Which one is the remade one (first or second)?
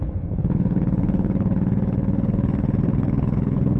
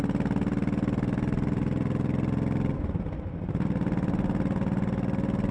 first